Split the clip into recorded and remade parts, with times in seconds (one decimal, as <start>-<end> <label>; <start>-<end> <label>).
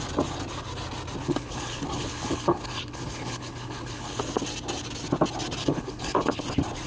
0.0-1.2 recorded; 1.2-4.2 remade; 4.2-5.6 recorded; 5.6-6.4 remade; 6.4-6.9 recorded